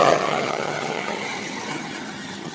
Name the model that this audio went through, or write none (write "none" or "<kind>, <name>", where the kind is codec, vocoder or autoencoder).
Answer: vocoder, HiFi-GAN